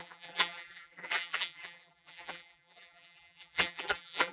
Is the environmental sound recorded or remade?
remade